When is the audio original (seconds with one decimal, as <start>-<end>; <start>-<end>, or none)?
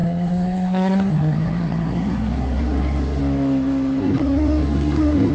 3.2-4.0